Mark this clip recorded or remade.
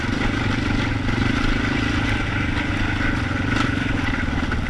recorded